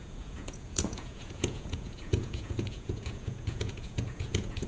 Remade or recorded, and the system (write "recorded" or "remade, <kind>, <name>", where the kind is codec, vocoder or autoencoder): remade, vocoder, Vocos